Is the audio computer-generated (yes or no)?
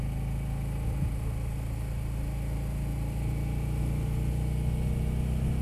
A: no